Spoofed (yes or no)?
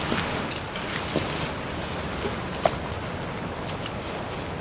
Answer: no